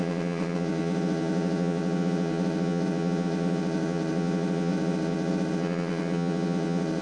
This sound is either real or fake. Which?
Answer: fake